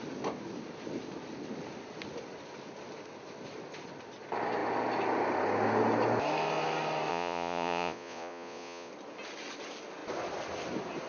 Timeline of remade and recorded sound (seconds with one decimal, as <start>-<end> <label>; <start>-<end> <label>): 0.0-7.1 recorded; 7.1-8.9 remade; 8.9-11.1 recorded